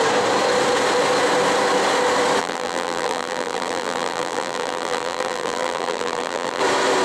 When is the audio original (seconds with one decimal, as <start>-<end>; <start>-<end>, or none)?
0.0-2.4; 6.6-7.0